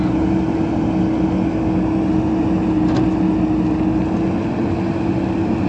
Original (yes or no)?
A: yes